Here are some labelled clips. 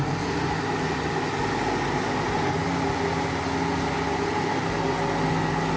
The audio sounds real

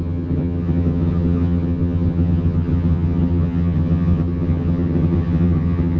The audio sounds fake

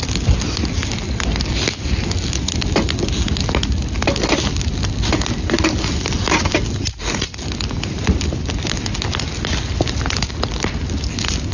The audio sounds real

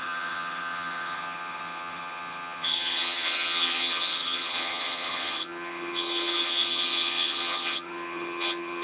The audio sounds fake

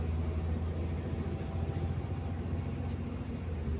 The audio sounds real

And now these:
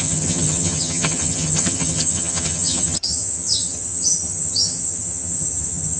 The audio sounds fake